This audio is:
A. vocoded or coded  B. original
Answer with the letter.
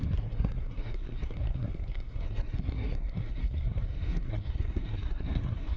A